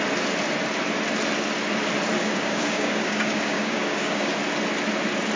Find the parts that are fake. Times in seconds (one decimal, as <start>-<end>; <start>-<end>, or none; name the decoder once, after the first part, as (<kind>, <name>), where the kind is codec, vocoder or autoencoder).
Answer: 2.2-4.3 (codec, DAC)